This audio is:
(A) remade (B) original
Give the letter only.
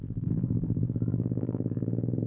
A